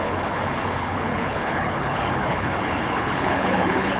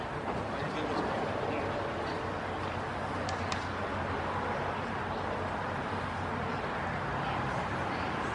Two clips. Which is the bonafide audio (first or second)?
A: second